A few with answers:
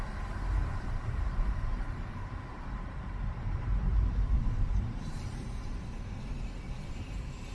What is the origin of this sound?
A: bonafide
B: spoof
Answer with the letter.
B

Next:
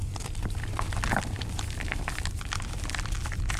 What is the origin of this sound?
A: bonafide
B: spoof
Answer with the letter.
B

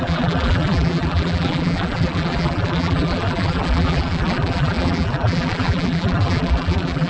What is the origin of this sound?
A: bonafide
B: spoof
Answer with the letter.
B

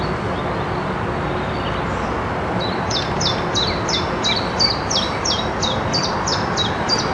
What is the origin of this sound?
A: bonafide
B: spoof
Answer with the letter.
A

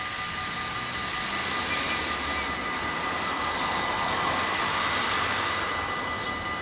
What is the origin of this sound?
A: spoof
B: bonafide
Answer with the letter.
B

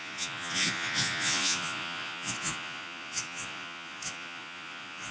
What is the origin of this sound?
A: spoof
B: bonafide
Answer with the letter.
A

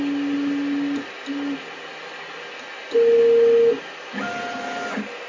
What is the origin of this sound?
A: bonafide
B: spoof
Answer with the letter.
A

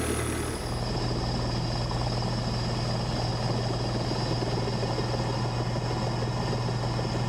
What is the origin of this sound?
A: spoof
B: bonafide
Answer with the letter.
B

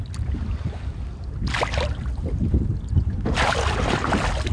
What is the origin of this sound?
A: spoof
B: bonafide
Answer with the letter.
B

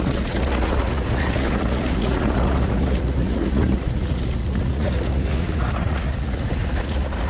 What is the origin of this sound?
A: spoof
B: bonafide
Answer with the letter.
A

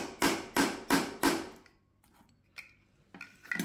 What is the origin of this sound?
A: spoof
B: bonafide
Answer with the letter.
B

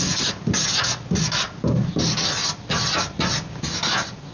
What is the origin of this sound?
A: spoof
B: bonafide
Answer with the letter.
B